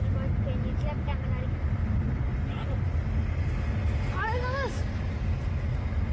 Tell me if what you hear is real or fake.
real